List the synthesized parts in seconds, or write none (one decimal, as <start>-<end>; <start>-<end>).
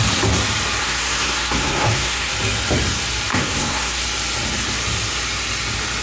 0.8-2.3; 3.3-4.0